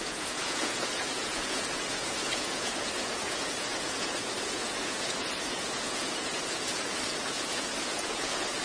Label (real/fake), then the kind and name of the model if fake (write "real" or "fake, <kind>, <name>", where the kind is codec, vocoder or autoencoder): fake, vocoder, Vocos